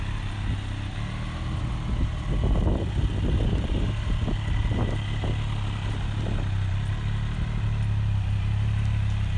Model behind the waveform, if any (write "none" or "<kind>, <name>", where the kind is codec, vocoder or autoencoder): none